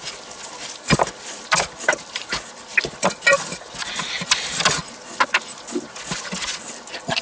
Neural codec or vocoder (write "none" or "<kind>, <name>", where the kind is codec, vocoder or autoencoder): none